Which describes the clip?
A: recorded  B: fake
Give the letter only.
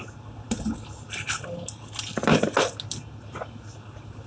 A